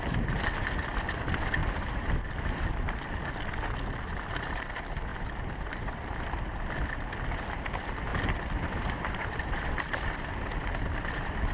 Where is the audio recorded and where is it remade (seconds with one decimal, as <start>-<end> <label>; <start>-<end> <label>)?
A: 0.0-1.6 recorded; 1.6-2.3 remade; 2.3-8.1 recorded; 8.1-9.4 remade; 9.4-11.5 recorded

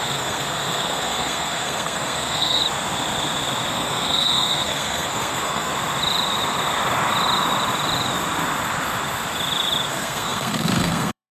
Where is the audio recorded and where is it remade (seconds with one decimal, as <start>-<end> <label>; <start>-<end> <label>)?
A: 0.0-2.6 remade; 2.6-3.7 recorded; 3.7-5.7 remade; 5.7-9.9 recorded; 9.9-11.3 remade

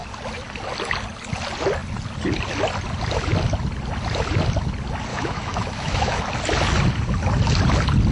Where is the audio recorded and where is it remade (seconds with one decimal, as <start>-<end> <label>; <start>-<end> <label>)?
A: 0.0-5.1 recorded; 5.1-6.2 remade; 6.2-8.1 recorded

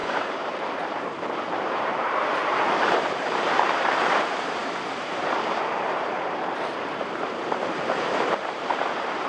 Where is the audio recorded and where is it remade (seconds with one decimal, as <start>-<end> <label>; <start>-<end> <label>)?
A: 0.0-9.3 remade

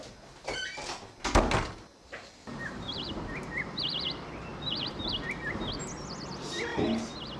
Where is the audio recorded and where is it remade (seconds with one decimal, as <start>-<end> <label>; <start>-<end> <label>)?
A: 0.0-2.5 recorded; 2.5-3.1 remade; 3.1-4.5 recorded; 4.5-5.1 remade; 5.1-7.4 recorded

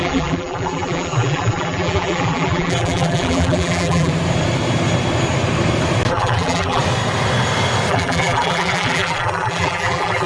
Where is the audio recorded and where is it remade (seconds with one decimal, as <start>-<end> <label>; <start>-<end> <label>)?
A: 0.0-4.1 remade; 4.1-6.1 recorded; 6.1-6.8 remade; 6.8-7.9 recorded; 7.9-10.3 remade

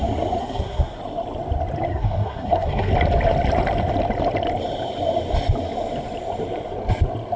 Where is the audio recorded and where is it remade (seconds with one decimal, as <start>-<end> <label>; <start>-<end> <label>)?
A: 0.0-0.4 recorded; 0.4-1.0 remade; 1.0-1.9 recorded; 1.9-2.9 remade; 2.9-7.4 recorded